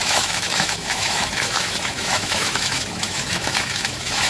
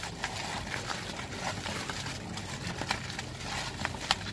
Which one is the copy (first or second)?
first